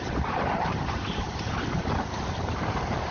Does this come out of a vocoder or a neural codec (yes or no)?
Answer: yes